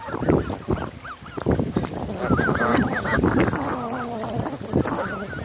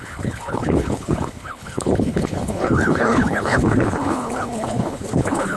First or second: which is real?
first